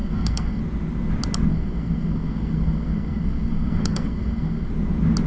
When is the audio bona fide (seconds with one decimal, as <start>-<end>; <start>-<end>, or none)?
0.6-1.5; 4.7-5.3